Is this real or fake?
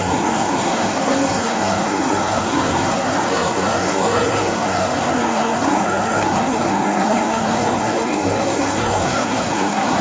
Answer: fake